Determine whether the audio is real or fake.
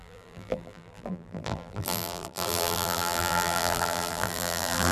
fake